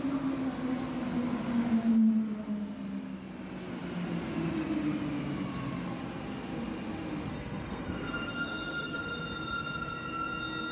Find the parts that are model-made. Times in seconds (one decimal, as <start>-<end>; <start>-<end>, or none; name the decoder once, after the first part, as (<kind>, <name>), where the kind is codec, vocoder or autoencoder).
7.3-9.0 (codec, SNAC)